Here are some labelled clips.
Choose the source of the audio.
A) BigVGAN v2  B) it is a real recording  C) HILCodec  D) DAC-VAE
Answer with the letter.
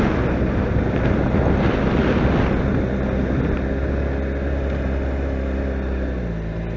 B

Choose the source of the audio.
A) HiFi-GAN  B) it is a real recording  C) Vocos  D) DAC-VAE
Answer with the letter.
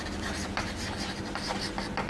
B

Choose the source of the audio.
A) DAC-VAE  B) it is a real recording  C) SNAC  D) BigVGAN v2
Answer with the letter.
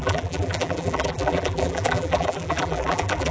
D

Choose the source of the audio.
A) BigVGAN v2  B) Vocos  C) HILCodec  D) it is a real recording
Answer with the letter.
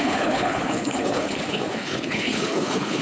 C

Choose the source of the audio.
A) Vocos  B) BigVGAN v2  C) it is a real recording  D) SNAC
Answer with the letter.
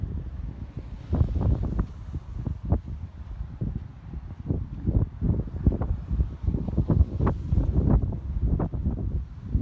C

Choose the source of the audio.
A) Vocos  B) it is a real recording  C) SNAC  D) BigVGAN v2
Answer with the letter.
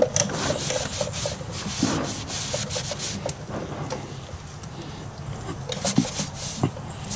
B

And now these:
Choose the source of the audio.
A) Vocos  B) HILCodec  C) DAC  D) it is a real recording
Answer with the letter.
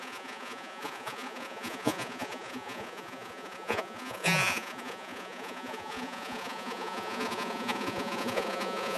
A